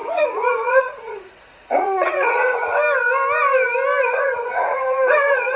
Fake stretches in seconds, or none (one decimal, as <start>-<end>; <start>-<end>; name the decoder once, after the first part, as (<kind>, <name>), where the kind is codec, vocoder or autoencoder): 0.0-2.7 (vocoder, Vocos); 4.1-5.6